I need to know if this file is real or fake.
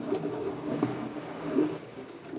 fake